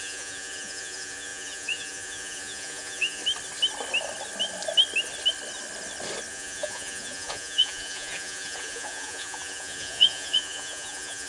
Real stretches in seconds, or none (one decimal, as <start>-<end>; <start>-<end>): 3.2-6.3